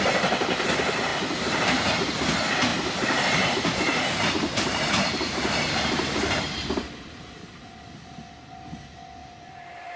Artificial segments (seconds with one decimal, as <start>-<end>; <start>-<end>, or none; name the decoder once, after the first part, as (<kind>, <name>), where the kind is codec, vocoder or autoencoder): 1.1-2.1 (vocoder, BigVGAN v2); 2.7-7.7; 9.2-10.0